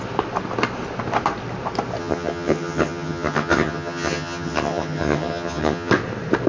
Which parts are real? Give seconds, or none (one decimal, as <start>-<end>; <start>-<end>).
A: 0.0-2.0; 5.9-6.5